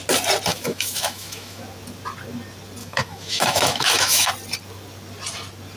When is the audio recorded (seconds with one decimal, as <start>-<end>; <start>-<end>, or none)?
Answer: 0.0-0.5; 1.6-2.8; 4.3-5.8